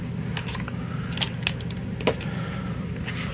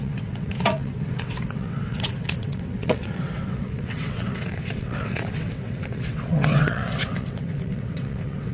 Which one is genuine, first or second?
first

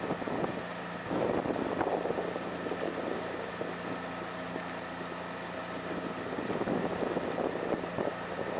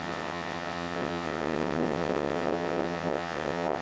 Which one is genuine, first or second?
first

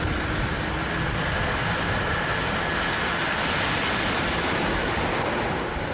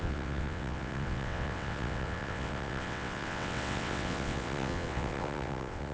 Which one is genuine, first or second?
first